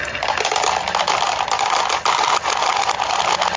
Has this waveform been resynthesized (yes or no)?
no